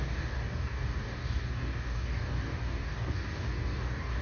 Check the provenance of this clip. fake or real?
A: fake